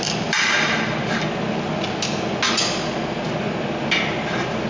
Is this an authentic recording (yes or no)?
yes